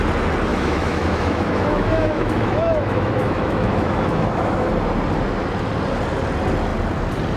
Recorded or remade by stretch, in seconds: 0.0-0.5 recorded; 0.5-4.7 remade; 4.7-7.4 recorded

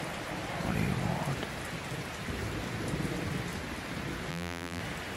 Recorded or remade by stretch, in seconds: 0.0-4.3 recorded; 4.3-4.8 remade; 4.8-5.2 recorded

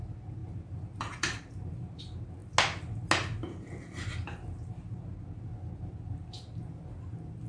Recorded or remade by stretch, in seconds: 0.0-0.4 recorded; 0.4-2.0 remade; 2.0-7.5 recorded

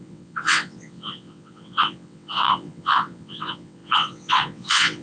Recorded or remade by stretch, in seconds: 0.0-5.0 remade

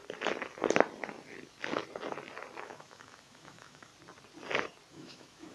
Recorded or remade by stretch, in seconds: 0.0-2.6 recorded; 2.6-3.9 remade; 3.9-4.9 recorded; 4.9-5.5 remade

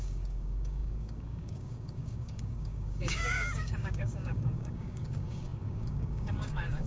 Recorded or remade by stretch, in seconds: 0.0-6.9 remade

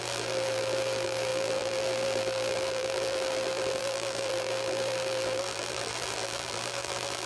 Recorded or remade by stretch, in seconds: 0.0-7.3 remade

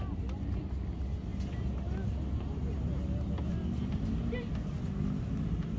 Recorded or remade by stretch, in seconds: 0.0-5.8 recorded